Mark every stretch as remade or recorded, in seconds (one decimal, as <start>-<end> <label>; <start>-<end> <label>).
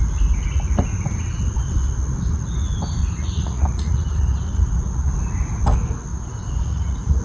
0.0-3.0 recorded; 3.0-5.1 remade; 5.1-6.1 recorded; 6.1-7.2 remade